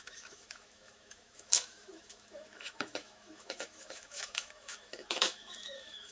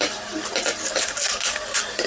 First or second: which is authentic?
second